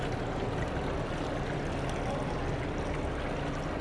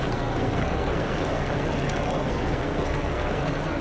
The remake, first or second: second